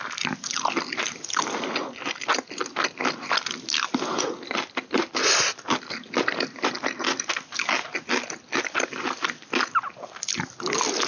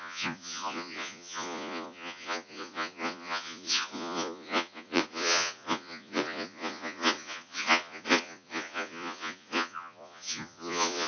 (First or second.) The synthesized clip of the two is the second